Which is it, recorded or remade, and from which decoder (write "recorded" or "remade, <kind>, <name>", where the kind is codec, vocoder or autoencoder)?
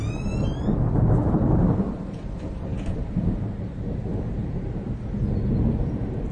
recorded